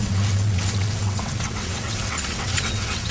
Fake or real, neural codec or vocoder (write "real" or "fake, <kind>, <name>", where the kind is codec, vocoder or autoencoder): fake, vocoder, WaveNeXt